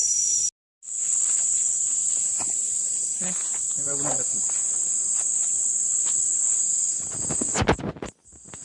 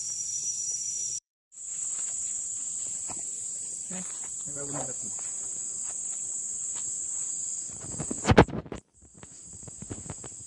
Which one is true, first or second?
first